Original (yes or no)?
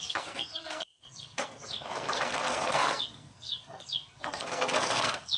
no